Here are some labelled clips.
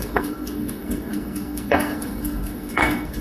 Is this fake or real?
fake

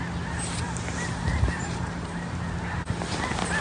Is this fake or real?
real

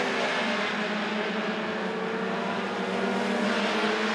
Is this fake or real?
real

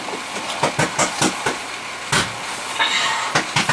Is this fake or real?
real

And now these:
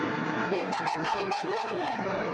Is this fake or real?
fake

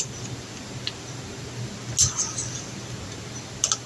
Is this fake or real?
real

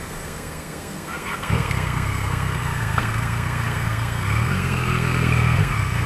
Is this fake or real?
fake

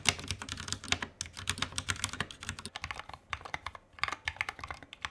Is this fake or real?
real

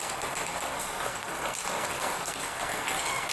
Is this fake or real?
fake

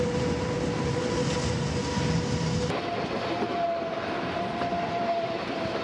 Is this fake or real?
real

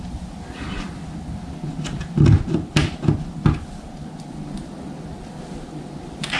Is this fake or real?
real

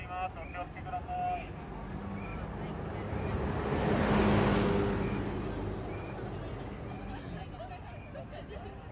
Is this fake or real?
real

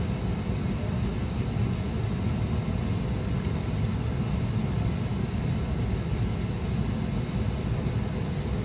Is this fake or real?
real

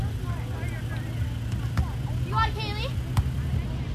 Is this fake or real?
real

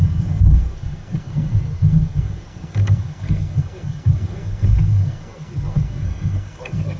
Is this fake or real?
fake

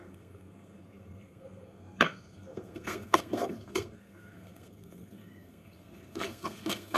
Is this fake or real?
fake